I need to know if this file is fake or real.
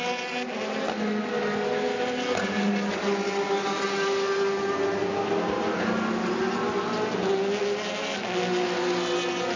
real